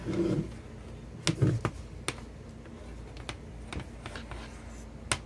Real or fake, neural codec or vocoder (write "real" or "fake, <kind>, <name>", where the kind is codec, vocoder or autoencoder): real